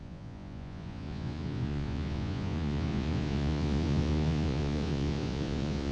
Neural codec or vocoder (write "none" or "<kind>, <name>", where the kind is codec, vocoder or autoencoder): vocoder, Vocos